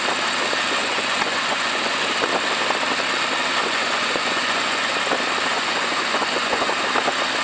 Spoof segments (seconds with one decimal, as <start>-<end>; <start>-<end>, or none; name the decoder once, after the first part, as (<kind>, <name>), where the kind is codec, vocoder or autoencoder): 0.8-2.1 (vocoder, Vocos); 3.4-4.9; 5.5-6.7